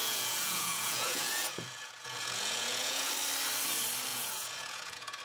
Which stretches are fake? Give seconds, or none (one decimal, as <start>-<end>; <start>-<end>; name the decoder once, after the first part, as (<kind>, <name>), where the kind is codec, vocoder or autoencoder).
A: 0.0-3.1 (vocoder, Vocos); 4.1-5.2